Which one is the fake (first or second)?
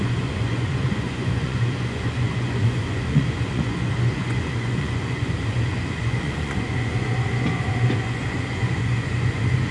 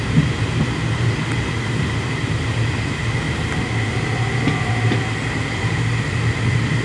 first